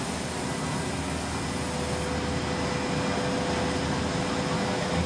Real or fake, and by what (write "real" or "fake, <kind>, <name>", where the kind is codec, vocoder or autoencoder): real